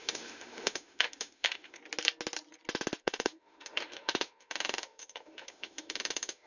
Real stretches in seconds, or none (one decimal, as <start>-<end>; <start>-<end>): 1.8-3.0